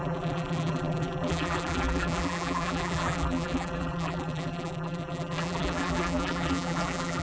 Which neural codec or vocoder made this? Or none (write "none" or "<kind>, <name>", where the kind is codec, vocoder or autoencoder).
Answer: vocoder, BigVGAN v2